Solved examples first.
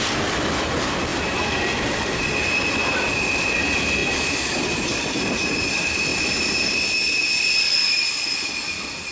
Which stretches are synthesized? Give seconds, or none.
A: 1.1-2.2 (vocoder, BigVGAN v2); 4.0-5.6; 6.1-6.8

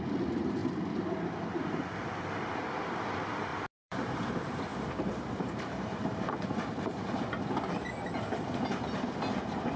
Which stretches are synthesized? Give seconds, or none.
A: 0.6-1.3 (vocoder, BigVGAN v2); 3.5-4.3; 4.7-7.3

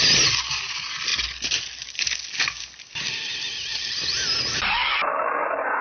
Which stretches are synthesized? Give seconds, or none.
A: none

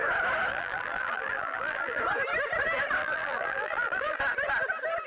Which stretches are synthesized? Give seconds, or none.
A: 0.5-2.0 (vocoder, BigVGAN v2); 3.0-4.2

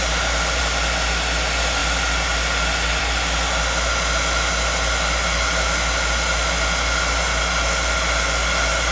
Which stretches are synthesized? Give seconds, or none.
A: none

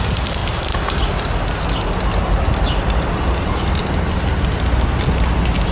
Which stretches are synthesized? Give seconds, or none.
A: none

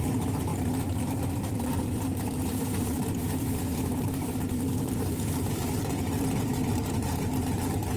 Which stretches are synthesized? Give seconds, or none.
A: 0.0-8.0 (vocoder, BigVGAN v2)

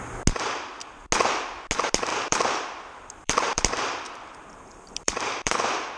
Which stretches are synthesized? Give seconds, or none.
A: 2.1-6.0 (vocoder, BigVGAN v2)